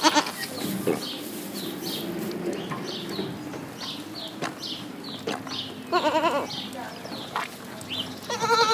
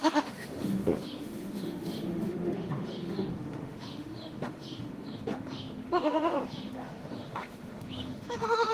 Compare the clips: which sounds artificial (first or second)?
second